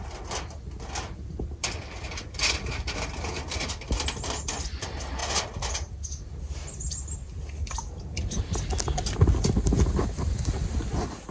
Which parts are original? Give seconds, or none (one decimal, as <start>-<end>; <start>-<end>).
0.0-11.3

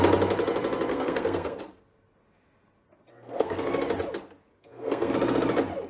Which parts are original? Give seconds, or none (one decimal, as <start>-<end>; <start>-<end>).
0.0-0.9; 1.6-3.1; 3.7-4.5; 5.1-5.9

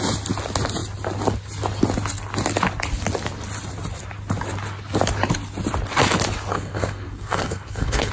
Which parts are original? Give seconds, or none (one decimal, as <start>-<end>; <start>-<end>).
0.0-6.5

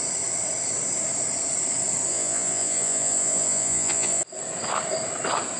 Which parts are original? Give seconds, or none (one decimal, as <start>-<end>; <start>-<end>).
0.0-2.1; 4.2-5.6

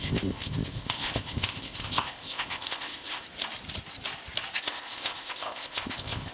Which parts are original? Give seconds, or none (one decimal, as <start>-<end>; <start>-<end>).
3.2-4.6